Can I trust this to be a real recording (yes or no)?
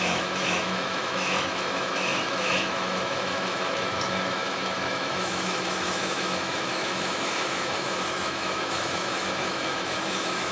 no